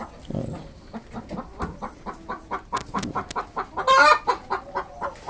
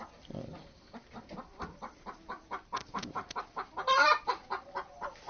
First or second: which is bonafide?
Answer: first